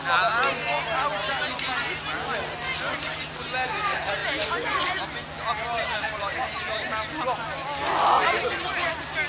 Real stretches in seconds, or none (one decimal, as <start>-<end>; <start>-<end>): 0.0-9.3